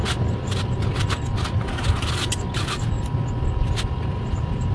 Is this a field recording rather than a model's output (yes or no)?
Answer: yes